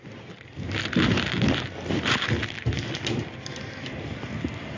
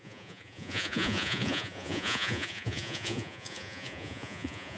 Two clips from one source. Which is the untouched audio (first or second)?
first